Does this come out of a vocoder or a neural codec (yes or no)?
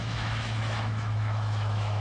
yes